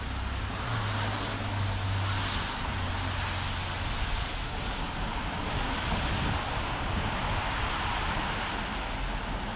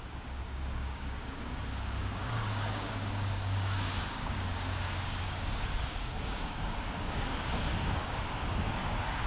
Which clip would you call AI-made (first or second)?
second